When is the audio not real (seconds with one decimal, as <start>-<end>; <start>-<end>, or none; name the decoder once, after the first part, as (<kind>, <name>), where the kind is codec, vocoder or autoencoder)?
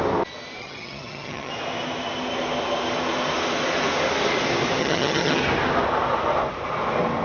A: 0.6-1.5 (vocoder, HiFi-GAN); 4.8-5.4